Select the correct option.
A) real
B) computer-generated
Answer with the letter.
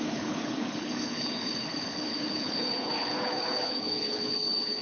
B